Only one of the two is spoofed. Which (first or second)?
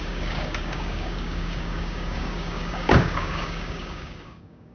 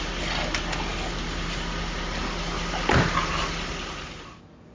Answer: first